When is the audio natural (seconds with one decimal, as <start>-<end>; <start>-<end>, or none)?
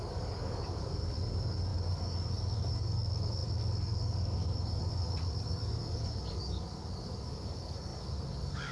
none